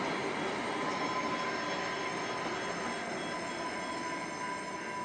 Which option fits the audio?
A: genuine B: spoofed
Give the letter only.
A